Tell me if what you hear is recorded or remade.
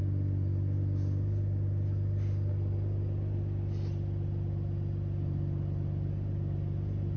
recorded